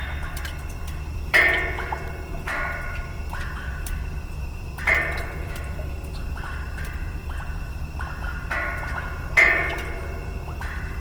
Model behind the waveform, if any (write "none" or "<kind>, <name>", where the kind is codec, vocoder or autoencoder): vocoder, BigVGAN v2